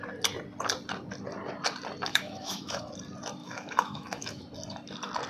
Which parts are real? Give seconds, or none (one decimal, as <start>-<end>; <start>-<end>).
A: 0.0-2.1; 2.8-3.4; 4.4-5.3